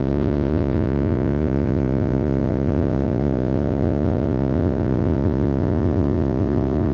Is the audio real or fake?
fake